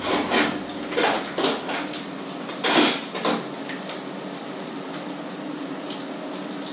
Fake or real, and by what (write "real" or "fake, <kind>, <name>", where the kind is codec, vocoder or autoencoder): real